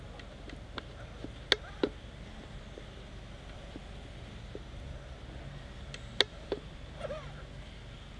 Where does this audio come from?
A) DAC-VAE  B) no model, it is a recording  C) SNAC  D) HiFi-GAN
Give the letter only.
B